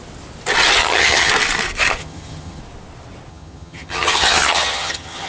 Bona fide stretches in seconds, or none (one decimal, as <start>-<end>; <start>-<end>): 0.0-0.8; 1.3-2.0; 2.6-3.3